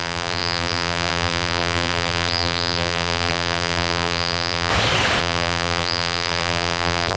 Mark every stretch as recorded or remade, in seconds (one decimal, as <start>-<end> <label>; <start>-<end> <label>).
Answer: 0.0-4.7 remade; 4.7-5.2 recorded; 5.2-7.2 remade